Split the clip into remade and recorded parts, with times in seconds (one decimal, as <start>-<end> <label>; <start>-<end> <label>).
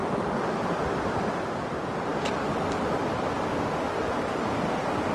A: 0.0-1.3 remade; 1.3-2.1 recorded; 2.1-3.1 remade; 3.1-5.1 recorded